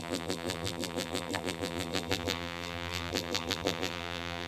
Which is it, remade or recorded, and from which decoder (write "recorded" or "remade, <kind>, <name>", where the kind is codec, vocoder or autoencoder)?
remade, vocoder, BigVGAN v2